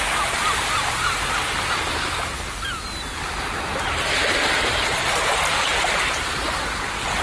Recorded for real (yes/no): yes